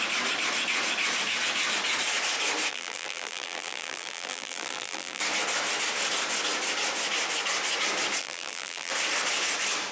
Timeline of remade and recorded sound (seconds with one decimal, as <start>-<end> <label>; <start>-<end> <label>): 0.0-2.7 recorded; 2.7-5.2 remade; 5.2-8.2 recorded; 8.2-8.9 remade; 8.9-9.9 recorded